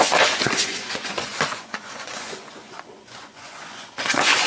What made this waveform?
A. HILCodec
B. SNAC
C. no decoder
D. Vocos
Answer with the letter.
D